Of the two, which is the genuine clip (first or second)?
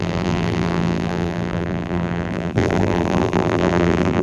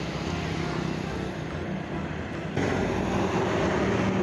second